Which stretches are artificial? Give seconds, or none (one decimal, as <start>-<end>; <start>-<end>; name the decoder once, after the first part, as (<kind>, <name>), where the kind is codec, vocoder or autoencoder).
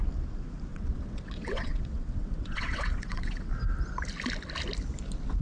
0.7-3.5 (vocoder, WaveNeXt)